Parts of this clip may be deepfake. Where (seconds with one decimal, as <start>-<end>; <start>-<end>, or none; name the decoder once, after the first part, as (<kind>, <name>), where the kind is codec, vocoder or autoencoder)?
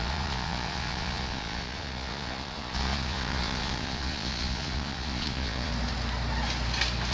0.0-5.7 (vocoder, Vocos)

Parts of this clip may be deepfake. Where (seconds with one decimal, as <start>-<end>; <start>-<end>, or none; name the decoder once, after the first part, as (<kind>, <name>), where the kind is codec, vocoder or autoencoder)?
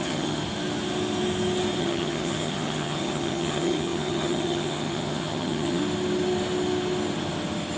0.0-0.4 (vocoder, HiFi-GAN); 1.8-5.8